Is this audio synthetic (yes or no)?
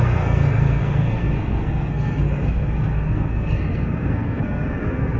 yes